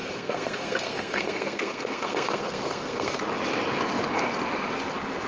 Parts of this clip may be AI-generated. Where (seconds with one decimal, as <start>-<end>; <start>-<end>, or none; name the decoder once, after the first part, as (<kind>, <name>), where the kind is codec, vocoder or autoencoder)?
0.0-3.2 (codec, SNAC)